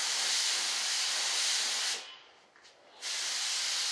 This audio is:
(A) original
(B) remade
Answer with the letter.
A